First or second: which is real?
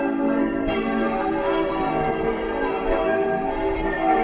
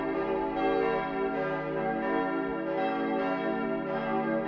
second